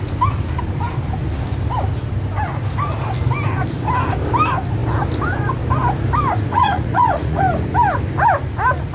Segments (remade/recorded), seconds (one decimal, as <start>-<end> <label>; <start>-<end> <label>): 0.0-6.5 recorded; 6.5-7.4 remade; 7.4-8.9 recorded